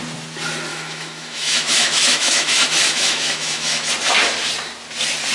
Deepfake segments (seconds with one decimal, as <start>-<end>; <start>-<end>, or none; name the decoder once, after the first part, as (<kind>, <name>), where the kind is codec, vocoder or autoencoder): 0.7-3.9 (autoencoder, DAC-VAE)

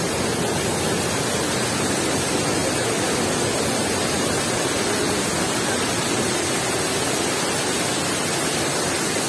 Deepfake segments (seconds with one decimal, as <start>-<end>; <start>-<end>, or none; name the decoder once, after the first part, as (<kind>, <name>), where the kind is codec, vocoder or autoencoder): none

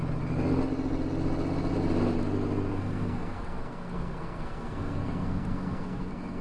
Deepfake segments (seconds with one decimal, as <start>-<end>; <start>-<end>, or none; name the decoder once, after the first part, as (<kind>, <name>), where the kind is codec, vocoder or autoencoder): 2.7-6.4 (codec, SNAC)

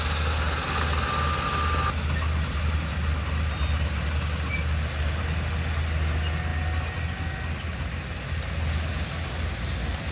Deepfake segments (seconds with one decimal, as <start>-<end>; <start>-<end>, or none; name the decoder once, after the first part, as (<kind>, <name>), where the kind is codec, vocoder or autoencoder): none